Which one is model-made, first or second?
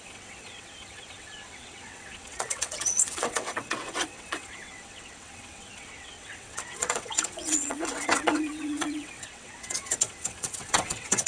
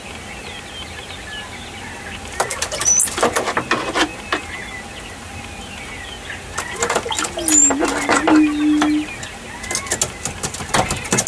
first